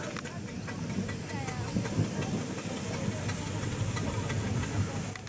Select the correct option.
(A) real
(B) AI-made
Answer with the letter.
A